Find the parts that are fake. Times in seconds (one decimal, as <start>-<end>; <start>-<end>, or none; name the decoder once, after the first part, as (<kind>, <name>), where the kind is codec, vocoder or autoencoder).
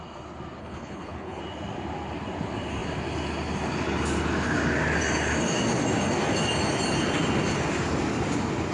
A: 0.6-1.4 (codec, HILCodec)